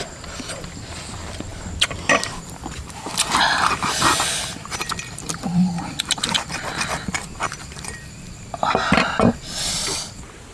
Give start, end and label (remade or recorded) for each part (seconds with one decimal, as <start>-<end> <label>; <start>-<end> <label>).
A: 0.0-10.5 remade